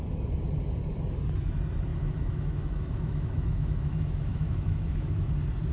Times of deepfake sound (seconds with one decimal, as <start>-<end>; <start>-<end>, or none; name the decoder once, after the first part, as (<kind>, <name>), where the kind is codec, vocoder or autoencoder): 1.9-5.3 (autoencoder, DAC-VAE)